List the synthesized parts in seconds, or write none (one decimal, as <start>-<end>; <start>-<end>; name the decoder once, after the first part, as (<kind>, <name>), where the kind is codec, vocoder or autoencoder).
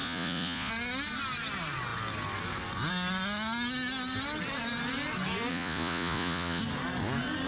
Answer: 0.0-0.7 (vocoder, Vocos); 5.5-6.6